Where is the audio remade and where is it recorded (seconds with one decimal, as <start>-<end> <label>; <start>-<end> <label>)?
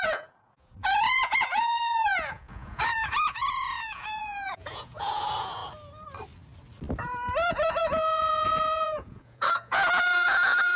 0.0-5.6 remade; 5.6-7.5 recorded; 7.5-10.8 remade